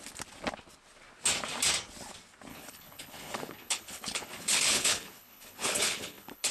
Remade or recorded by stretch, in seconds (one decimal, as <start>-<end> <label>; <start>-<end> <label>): 0.0-2.5 recorded; 2.5-6.5 remade